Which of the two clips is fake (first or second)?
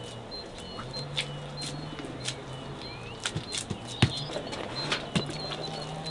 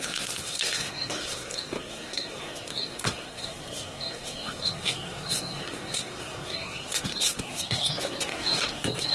second